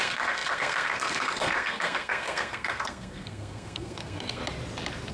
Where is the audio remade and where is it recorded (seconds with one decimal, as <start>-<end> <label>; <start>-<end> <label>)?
0.0-4.4 remade; 4.4-5.1 recorded

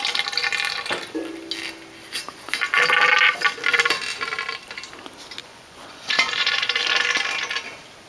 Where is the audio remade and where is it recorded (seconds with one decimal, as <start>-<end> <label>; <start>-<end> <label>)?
0.0-5.4 recorded; 5.4-6.8 remade; 6.8-8.1 recorded

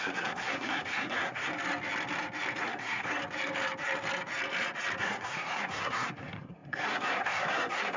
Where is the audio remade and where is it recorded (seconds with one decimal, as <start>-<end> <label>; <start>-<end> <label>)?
0.0-1.5 remade; 1.5-2.6 recorded; 2.6-3.2 remade; 3.2-5.0 recorded; 5.0-8.0 remade

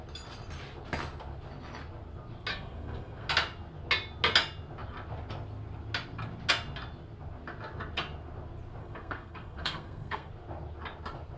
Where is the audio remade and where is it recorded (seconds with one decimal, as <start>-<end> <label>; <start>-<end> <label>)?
0.0-2.5 recorded; 2.5-3.3 remade; 3.3-8.8 recorded; 8.8-10.3 remade; 10.3-11.4 recorded

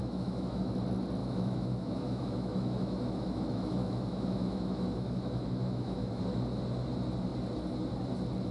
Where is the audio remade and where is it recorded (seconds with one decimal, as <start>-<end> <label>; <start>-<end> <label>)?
0.0-0.7 remade; 0.7-1.2 recorded; 1.2-6.2 remade; 6.2-8.5 recorded